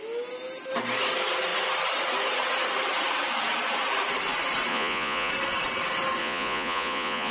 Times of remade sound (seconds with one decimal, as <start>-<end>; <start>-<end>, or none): 4.7-5.3; 6.2-7.3